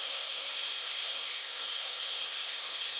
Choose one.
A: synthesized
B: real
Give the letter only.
A